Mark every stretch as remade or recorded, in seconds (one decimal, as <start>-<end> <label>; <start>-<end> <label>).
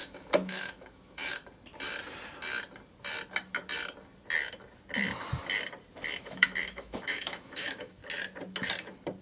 0.0-1.4 remade; 1.4-6.2 recorded; 6.2-8.0 remade; 8.0-9.2 recorded